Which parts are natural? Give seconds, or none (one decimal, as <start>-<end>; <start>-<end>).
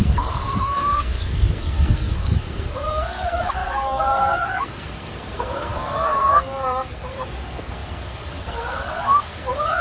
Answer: none